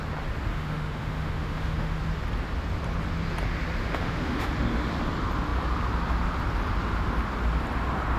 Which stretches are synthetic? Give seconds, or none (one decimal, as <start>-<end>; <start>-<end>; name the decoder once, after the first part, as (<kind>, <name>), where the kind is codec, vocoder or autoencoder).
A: 0.5-2.0 (autoencoder, DAC-VAE); 3.8-4.5